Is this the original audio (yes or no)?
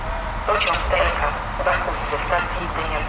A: yes